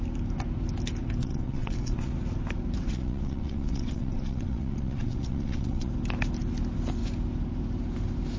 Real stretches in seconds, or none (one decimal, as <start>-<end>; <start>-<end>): 0.0-1.2; 2.1-2.8; 5.9-8.4